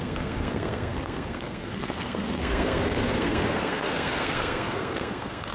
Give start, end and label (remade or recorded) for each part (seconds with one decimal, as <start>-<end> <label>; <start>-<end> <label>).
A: 0.0-5.5 remade